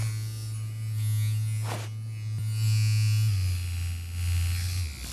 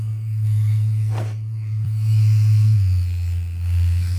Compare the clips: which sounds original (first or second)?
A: first